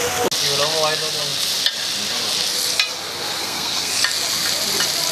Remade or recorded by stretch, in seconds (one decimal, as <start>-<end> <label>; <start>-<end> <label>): 0.0-3.4 recorded; 3.4-3.9 remade; 3.9-5.1 recorded

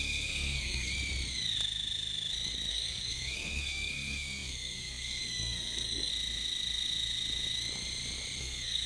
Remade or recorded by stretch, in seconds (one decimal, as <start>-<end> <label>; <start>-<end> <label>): 0.0-0.9 remade; 0.9-2.7 recorded; 2.7-6.1 remade; 6.1-8.4 recorded; 8.4-8.9 remade

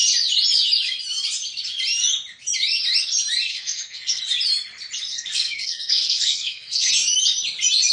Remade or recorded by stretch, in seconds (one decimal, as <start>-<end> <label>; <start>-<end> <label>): 0.0-3.5 recorded; 3.5-4.2 remade; 4.2-5.1 recorded; 5.1-6.9 remade; 6.9-7.9 recorded

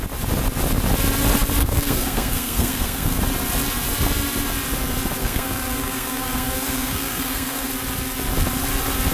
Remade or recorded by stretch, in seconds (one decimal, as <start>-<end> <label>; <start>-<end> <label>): 0.0-1.6 recorded; 1.6-3.2 remade; 3.2-5.2 recorded; 5.2-7.7 remade; 7.7-9.1 recorded

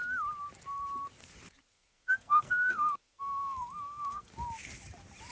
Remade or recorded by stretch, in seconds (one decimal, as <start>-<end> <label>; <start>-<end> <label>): 0.0-1.7 recorded; 1.7-4.3 remade; 4.3-5.3 recorded

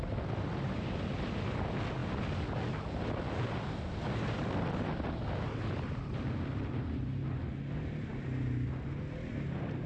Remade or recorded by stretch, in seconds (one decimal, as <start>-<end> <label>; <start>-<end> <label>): 0.0-9.9 recorded

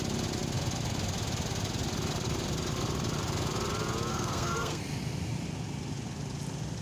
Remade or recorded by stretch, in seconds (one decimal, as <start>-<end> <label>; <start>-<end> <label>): 0.0-4.1 recorded; 4.1-4.8 remade; 4.8-6.8 recorded